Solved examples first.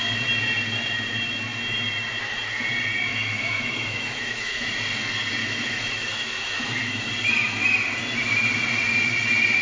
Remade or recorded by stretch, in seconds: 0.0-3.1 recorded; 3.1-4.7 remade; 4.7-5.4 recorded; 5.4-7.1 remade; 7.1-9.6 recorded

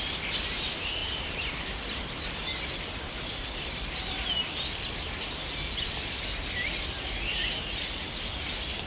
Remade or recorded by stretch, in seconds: 0.0-8.9 remade

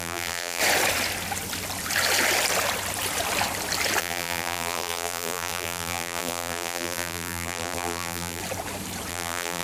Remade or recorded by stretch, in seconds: 0.0-0.6 remade; 0.6-4.0 recorded; 4.0-8.4 remade; 8.4-9.1 recorded; 9.1-9.6 remade

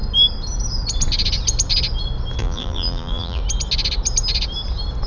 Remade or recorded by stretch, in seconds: 0.0-2.4 recorded; 2.4-3.4 remade; 3.4-5.1 recorded